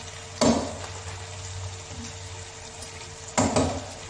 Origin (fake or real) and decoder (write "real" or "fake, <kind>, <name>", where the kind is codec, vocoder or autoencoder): real